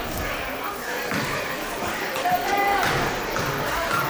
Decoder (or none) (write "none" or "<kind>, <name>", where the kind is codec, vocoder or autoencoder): codec, DAC